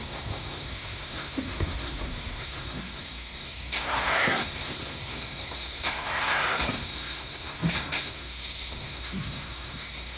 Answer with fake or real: fake